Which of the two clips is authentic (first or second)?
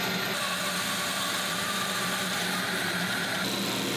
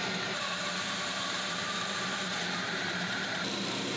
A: first